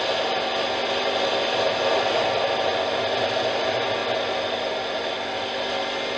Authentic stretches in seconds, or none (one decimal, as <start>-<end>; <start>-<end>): 0.0-6.2

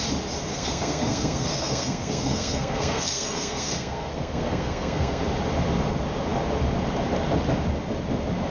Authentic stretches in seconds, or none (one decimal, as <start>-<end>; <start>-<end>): 0.0-0.5; 5.2-8.5

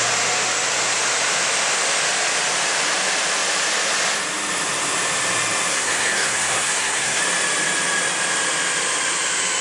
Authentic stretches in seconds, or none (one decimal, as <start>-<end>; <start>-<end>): 0.0-5.7; 7.2-9.6

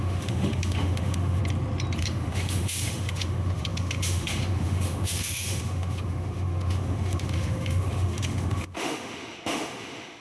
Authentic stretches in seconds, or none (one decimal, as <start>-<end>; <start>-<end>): 1.4-2.0

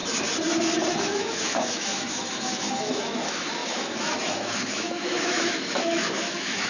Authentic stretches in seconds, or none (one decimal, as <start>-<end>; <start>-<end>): 0.0-1.2